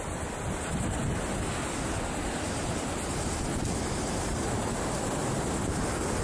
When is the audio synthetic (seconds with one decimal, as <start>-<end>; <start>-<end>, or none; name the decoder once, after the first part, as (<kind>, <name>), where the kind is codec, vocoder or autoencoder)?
none